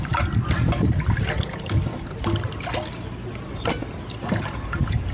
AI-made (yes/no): no